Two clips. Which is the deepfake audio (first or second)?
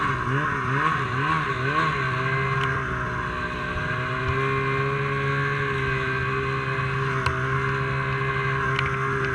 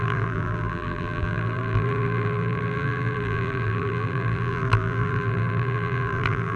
second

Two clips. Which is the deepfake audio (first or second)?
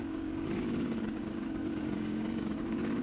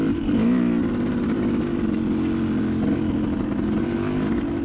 first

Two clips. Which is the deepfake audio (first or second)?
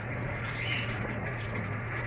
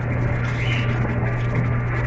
first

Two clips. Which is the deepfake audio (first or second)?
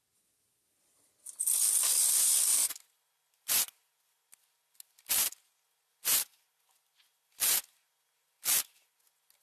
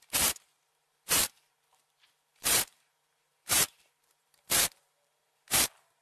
second